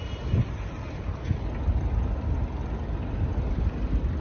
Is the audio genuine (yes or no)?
yes